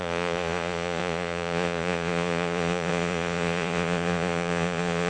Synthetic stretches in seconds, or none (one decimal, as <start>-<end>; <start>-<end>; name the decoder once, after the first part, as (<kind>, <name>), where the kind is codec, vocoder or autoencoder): 0.0-5.1 (vocoder, Vocos)